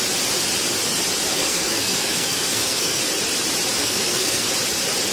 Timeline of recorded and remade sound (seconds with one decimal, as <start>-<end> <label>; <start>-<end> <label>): 0.0-1.3 recorded; 1.3-3.0 remade; 3.0-3.8 recorded; 3.8-4.5 remade; 4.5-5.1 recorded